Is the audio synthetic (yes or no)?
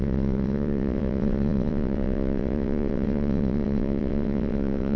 yes